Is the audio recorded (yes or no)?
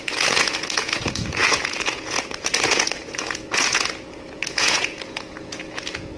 no